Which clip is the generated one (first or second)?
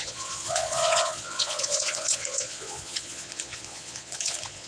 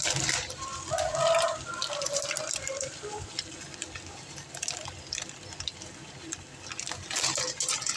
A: first